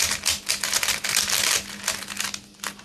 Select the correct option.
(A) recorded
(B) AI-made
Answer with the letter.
A